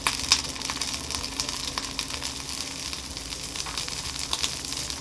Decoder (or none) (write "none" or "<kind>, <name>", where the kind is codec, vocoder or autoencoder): none